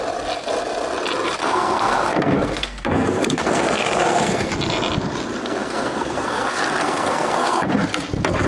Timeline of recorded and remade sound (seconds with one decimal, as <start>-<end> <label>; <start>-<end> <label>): 0.0-1.4 recorded; 1.4-4.5 remade; 4.5-5.4 recorded; 5.4-7.8 remade; 7.8-8.5 recorded